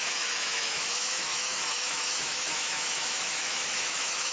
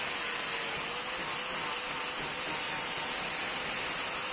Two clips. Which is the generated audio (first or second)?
first